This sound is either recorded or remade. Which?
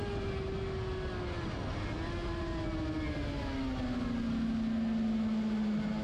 recorded